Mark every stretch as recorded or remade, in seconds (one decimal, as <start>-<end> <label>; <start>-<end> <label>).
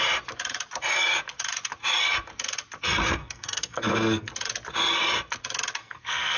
0.0-3.2 recorded; 3.2-4.3 remade; 4.3-5.8 recorded; 5.8-6.4 remade